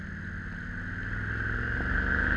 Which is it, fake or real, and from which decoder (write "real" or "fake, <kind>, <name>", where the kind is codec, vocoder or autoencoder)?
real